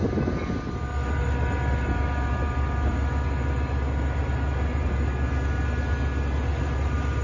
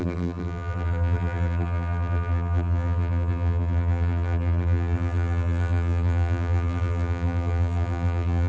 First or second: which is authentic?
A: first